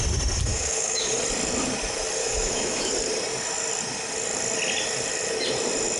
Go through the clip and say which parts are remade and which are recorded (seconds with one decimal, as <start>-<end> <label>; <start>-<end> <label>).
0.0-0.5 recorded; 0.5-1.1 remade; 1.1-2.2 recorded; 2.2-2.9 remade; 2.9-6.0 recorded